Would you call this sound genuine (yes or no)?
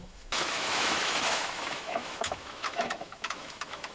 no